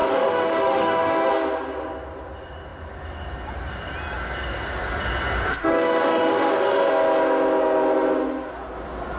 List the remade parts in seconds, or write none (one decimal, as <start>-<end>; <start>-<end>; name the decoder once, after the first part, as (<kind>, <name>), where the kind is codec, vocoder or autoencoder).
0.0-1.3 (autoencoder, DAC-VAE); 5.5-6.9